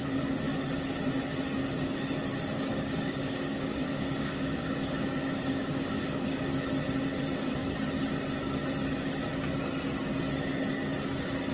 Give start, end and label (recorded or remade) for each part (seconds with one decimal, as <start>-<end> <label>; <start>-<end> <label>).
0.0-2.7 recorded; 2.7-6.4 remade; 6.4-11.5 recorded